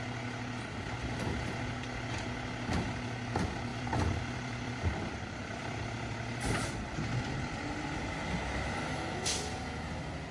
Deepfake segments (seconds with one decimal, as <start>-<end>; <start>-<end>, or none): 3.7-7.2